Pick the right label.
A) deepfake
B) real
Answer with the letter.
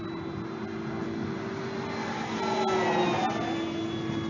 B